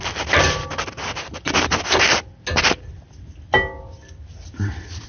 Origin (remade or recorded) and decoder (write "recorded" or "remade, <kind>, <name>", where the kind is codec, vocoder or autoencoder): recorded